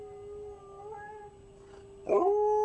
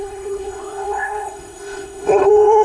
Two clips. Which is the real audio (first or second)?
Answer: first